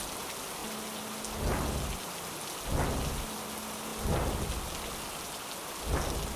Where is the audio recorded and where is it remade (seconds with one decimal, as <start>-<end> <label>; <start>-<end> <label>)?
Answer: 0.0-6.4 recorded